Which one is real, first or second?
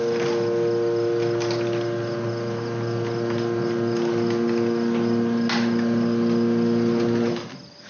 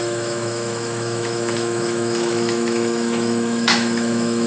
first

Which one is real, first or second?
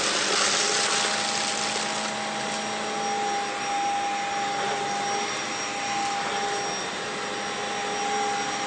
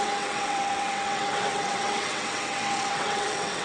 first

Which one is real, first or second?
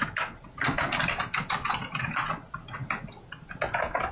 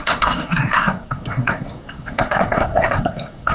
first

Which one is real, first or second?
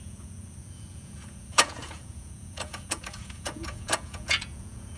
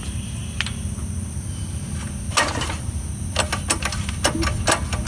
second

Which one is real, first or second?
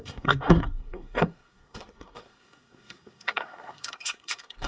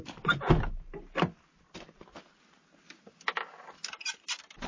second